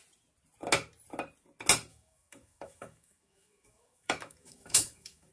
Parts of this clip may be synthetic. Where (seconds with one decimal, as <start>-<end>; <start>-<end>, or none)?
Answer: 1.9-5.3